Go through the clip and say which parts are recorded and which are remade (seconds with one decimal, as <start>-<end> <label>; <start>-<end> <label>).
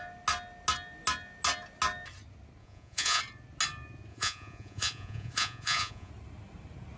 0.0-2.6 recorded; 2.6-3.2 remade; 3.2-4.1 recorded; 4.1-6.1 remade; 6.1-7.0 recorded